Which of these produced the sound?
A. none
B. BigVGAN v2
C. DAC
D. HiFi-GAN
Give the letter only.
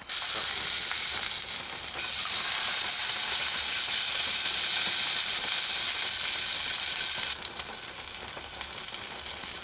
A